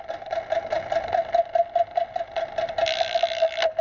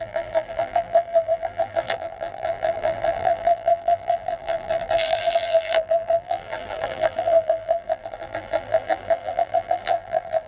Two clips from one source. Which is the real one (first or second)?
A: first